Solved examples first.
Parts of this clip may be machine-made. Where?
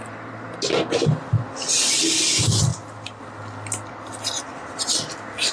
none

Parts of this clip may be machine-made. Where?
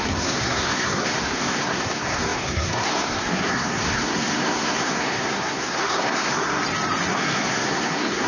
0.0-6.6 (codec, SNAC); 7.1-8.3